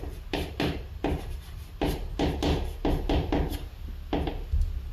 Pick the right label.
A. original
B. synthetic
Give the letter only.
A